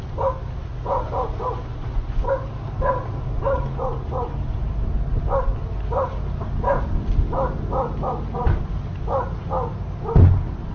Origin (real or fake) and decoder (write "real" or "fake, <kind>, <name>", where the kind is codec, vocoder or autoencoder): real